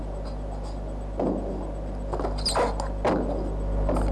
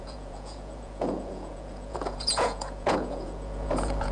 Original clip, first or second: first